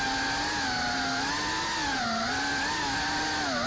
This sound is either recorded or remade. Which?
recorded